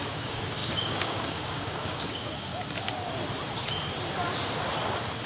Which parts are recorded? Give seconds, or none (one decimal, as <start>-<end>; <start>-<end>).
2.5-5.3